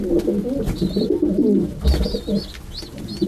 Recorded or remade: recorded